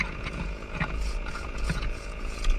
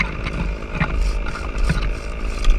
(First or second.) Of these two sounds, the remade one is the first